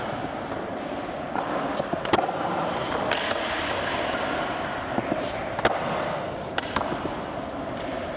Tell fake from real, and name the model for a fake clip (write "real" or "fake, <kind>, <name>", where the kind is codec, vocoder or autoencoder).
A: real